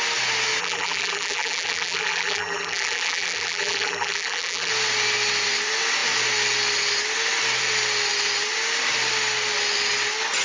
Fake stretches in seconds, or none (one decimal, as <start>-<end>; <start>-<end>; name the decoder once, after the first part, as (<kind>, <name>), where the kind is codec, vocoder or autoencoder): 0.6-4.7 (vocoder, BigVGAN v2)